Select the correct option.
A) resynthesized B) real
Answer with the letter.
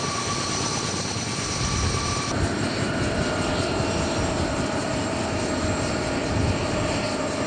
B